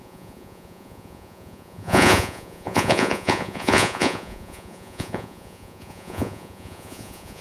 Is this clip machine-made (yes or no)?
yes